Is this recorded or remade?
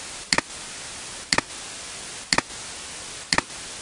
recorded